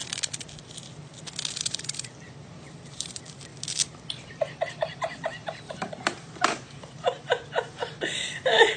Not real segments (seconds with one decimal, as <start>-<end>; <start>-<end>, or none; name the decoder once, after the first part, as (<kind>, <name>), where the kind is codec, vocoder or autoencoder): 1.6-3.5 (vocoder, BigVGAN v2); 4.3-8.8